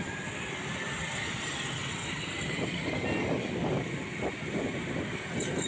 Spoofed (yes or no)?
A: no